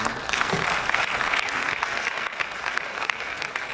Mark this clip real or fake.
fake